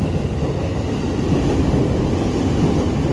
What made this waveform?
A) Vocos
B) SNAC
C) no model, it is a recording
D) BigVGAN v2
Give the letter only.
D